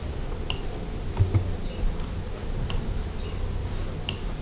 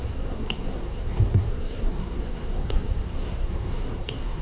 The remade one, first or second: second